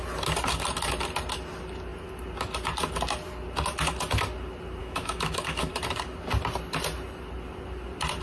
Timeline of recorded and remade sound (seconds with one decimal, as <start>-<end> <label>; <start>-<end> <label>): 0.0-4.8 recorded; 4.8-5.7 remade; 5.7-8.2 recorded